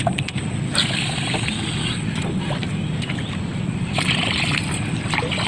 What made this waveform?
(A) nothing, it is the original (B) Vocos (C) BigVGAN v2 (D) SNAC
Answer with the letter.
A